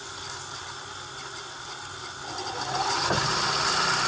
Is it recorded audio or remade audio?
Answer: recorded